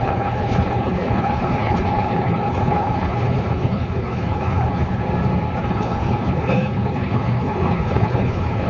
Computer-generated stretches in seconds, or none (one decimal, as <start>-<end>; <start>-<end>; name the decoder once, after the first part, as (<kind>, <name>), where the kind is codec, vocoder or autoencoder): 0.0-5.0 (codec, HILCodec); 5.6-8.7

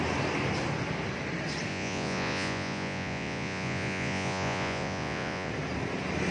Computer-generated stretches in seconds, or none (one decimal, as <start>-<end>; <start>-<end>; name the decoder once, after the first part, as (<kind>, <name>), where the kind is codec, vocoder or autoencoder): 1.7-5.5 (vocoder, Vocos)